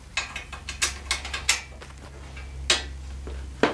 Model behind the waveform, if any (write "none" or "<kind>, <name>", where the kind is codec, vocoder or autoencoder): none